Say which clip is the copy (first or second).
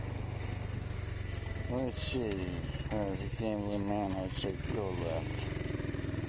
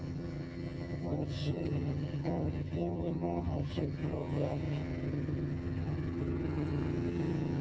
second